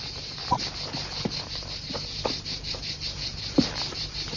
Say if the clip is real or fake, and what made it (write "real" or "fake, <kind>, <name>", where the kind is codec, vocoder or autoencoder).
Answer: fake, vocoder, BigVGAN v2